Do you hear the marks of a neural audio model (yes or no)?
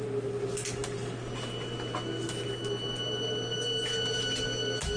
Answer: no